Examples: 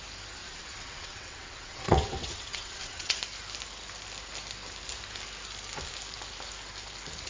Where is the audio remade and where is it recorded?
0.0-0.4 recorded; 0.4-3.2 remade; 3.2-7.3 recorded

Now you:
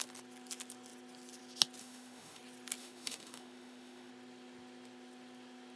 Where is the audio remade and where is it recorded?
0.0-1.8 recorded; 1.8-2.4 remade; 2.4-2.8 recorded; 2.8-4.1 remade; 4.1-5.8 recorded

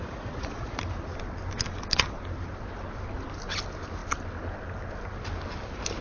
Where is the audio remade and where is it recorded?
0.0-0.8 remade; 0.8-6.0 recorded

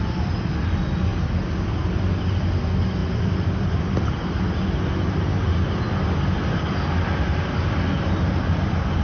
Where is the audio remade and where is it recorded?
0.0-9.0 recorded

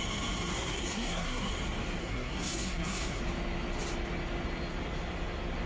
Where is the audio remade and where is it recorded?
0.0-0.5 recorded; 0.5-1.5 remade; 1.5-2.0 recorded; 2.0-3.2 remade; 3.2-5.7 recorded

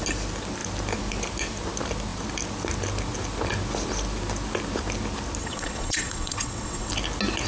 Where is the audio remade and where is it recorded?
0.0-5.4 recorded; 5.4-6.9 remade; 6.9-7.5 recorded

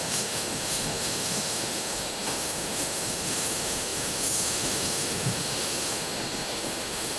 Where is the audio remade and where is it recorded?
0.0-7.2 remade

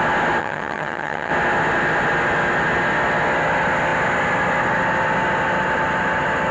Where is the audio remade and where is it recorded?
0.0-0.4 recorded; 0.4-1.3 remade; 1.3-6.5 recorded